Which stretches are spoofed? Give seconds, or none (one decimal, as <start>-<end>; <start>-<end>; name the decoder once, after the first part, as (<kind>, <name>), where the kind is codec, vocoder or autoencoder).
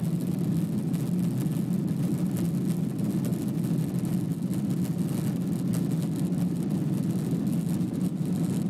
none